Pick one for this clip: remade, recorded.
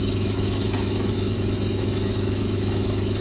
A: remade